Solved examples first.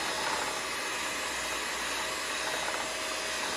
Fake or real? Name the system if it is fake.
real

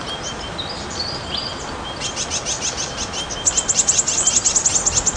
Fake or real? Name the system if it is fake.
real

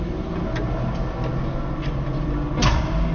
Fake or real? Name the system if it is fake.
real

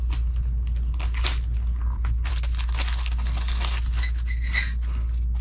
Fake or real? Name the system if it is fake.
real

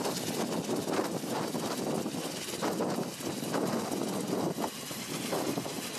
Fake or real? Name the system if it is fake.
real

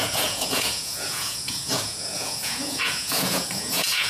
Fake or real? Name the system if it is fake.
fake, vocoder, Vocos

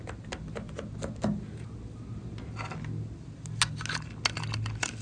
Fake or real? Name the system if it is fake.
real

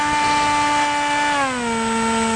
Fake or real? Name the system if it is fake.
real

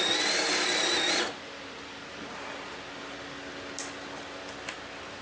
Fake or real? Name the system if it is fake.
real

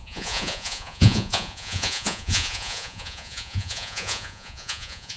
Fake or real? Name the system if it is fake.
fake, vocoder, Vocos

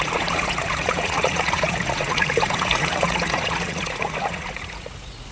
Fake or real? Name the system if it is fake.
fake, vocoder, Vocos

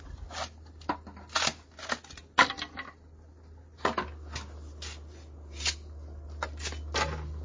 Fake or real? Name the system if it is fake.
real